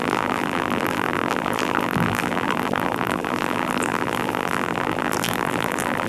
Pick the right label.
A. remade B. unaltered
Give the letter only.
A